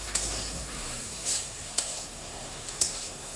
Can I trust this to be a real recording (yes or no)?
no